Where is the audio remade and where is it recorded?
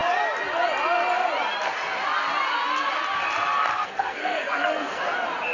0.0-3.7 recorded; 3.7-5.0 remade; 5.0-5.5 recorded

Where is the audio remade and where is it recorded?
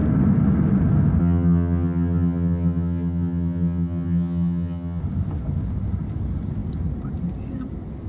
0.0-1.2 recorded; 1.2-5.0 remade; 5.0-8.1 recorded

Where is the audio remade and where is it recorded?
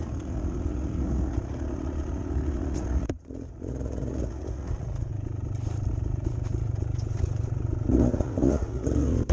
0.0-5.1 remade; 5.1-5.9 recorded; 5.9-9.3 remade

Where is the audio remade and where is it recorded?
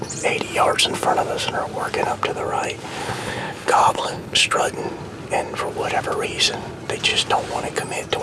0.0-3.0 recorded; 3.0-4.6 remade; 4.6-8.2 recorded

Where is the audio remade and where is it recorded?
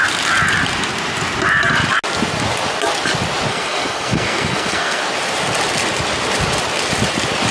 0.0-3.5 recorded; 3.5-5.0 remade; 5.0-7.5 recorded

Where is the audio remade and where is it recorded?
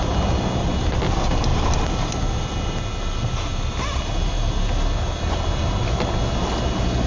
0.0-7.1 recorded